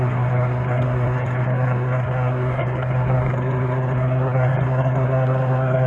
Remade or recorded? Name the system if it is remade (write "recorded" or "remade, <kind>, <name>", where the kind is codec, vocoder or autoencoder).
remade, codec, SNAC